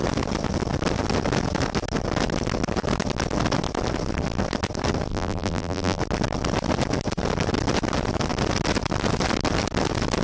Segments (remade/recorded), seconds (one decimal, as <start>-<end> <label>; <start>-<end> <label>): 0.0-5.1 recorded; 5.1-6.0 remade; 6.0-10.2 recorded